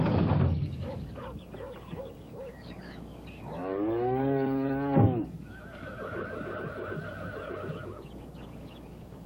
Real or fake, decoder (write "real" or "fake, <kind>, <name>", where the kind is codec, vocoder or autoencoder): fake, codec, DAC